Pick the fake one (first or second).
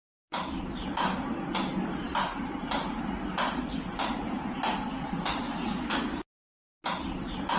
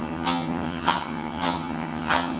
second